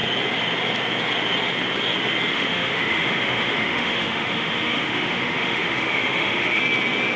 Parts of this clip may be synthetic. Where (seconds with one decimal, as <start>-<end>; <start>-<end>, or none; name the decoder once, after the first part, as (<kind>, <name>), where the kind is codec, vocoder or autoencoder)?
2.3-6.6 (autoencoder, DAC-VAE)